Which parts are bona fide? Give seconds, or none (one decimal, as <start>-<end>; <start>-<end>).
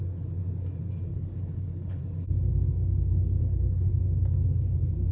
0.0-1.1; 2.0-3.4; 3.9-5.1